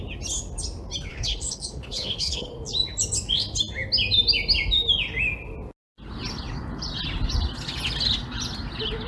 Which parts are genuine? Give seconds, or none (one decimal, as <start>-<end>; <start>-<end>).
0.0-1.1; 2.5-9.1